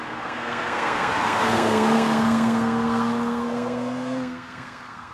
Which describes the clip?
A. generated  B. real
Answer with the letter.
A